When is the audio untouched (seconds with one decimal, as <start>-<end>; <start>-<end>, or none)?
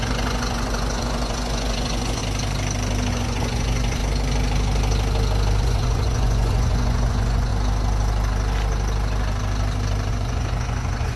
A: 2.2-3.1; 4.0-5.6; 7.5-10.1